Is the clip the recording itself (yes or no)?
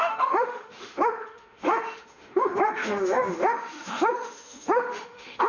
no